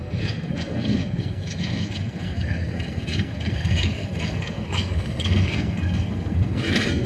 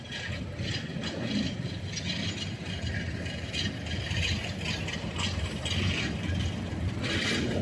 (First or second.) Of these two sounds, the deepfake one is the first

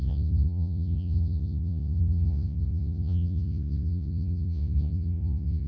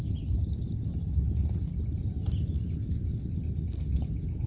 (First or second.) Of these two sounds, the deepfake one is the first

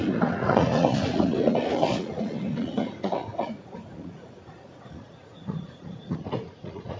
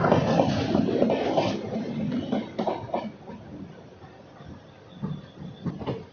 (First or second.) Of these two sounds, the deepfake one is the first